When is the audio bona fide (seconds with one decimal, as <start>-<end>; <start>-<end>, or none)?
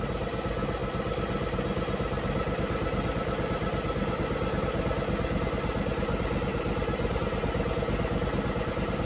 0.0-9.1